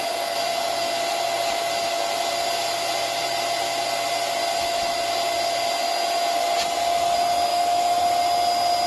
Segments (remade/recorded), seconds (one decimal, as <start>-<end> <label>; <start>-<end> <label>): 0.0-7.5 recorded; 7.5-8.0 remade; 8.0-8.9 recorded